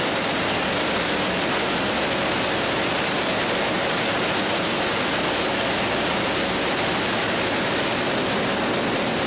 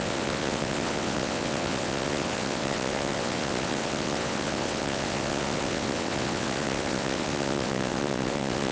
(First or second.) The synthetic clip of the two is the second